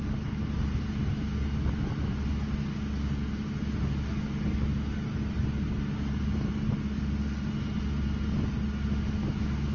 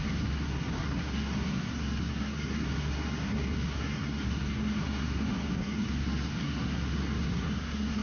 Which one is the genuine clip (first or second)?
first